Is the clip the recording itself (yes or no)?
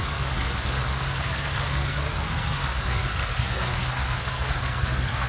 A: no